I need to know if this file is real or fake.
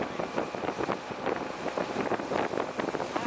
real